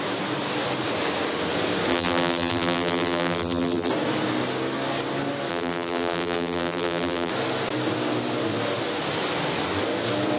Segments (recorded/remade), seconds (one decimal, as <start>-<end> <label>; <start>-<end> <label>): 0.0-1.9 recorded; 1.9-3.9 remade; 3.9-5.5 recorded; 5.5-7.3 remade; 7.3-10.4 recorded